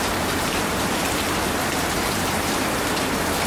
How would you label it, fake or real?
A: fake